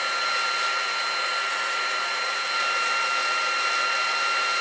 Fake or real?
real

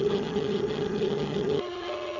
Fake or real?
fake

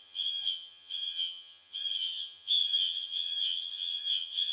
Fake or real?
fake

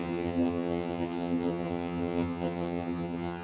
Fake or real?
fake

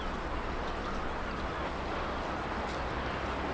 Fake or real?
real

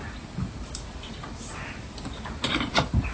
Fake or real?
real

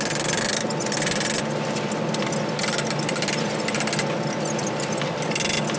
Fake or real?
real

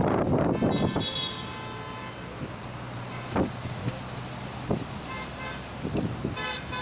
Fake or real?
real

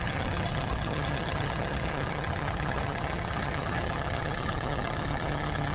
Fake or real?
fake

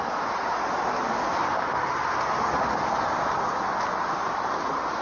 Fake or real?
real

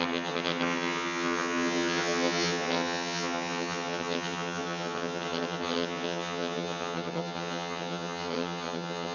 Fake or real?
fake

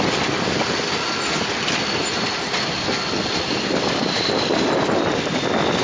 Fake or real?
real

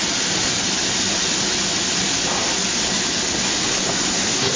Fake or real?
real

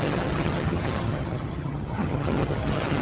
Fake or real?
fake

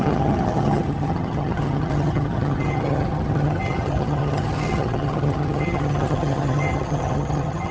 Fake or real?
fake